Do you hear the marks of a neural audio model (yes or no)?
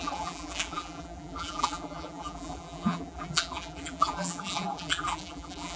yes